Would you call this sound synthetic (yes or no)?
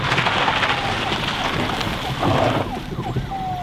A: no